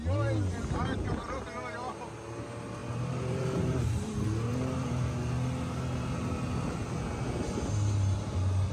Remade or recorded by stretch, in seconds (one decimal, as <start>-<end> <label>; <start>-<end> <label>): 0.0-2.8 recorded; 2.8-4.1 remade; 4.1-4.5 recorded; 4.5-5.1 remade; 5.1-8.7 recorded